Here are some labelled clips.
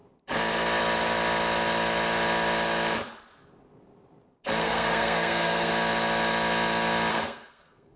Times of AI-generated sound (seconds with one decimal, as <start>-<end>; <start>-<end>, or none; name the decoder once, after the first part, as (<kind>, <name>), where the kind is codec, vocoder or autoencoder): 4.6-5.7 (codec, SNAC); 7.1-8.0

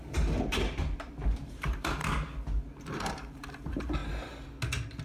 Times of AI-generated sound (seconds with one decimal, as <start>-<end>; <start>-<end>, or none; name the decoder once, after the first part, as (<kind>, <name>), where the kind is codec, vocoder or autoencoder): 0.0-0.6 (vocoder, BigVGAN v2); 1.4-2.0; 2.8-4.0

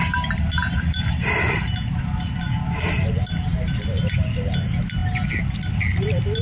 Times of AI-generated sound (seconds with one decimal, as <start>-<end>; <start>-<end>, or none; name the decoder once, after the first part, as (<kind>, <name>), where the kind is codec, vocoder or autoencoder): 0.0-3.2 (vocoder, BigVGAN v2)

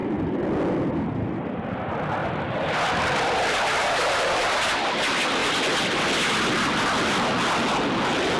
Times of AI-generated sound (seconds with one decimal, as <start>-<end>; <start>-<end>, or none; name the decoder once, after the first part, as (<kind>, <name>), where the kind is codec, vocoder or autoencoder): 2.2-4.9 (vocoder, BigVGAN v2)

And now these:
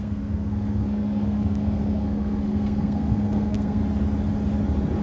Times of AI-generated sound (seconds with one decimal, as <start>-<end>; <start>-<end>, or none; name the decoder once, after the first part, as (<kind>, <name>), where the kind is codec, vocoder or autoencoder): 0.0-3.8 (codec, SNAC)

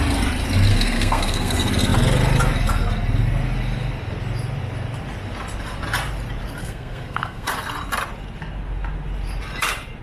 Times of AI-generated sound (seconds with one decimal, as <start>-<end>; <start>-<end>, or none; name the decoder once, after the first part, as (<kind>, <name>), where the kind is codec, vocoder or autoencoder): 0.7-1.5 (codec, SNAC); 6.6-7.5

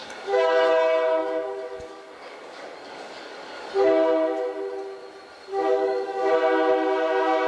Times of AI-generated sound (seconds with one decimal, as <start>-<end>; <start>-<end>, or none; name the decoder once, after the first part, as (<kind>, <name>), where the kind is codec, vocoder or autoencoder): 0.0-0.7 (codec, DAC); 1.2-3.7; 5.5-6.3